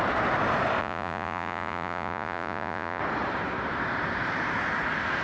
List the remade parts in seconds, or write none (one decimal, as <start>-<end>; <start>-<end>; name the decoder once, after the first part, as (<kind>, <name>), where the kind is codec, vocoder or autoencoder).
0.8-3.0 (vocoder, Vocos)